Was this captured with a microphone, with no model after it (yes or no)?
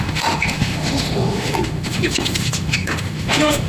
no